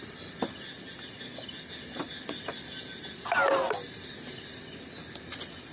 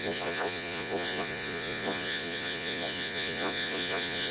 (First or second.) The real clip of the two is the first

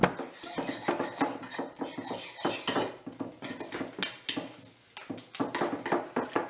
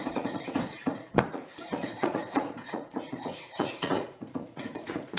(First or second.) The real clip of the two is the first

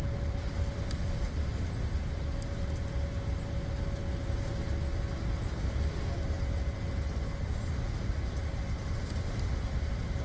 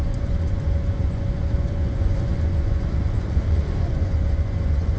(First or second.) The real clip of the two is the first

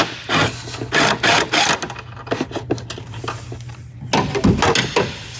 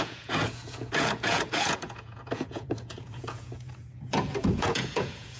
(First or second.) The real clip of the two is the first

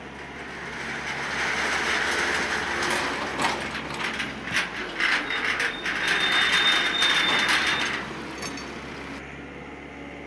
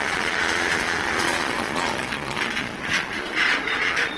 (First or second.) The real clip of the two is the first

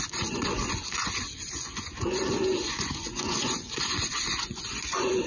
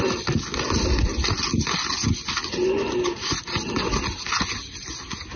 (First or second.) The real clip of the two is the second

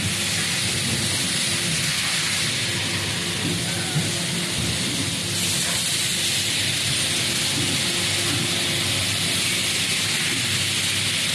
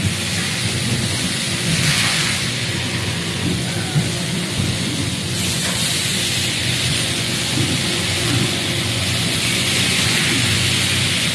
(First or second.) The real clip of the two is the first